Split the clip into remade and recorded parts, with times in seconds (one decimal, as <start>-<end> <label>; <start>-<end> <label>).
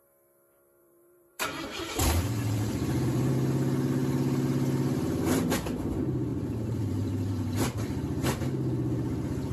0.0-0.8 recorded; 0.8-3.3 remade; 3.3-6.3 recorded; 6.3-7.3 remade; 7.3-9.5 recorded